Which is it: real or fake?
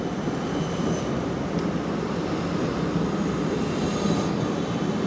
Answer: real